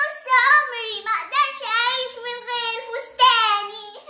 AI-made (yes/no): no